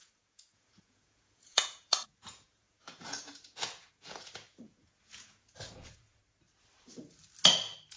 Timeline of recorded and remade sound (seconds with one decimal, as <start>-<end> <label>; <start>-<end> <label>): 0.0-6.2 remade; 6.2-8.0 recorded